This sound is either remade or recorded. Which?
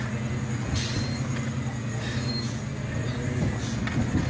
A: recorded